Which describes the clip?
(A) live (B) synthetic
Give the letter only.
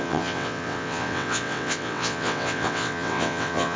B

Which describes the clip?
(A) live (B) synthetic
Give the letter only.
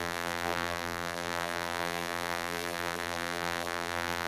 B